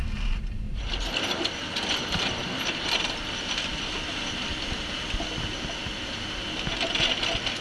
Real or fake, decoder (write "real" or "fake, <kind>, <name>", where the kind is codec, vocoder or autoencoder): real